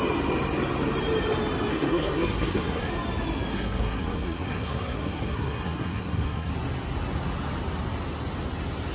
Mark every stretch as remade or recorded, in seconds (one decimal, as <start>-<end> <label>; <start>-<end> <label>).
0.0-1.7 recorded; 1.7-2.9 remade; 2.9-3.5 recorded; 3.5-6.5 remade; 6.5-8.9 recorded